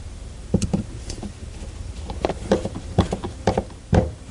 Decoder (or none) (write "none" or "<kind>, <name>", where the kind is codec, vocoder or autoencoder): vocoder, BigVGAN v2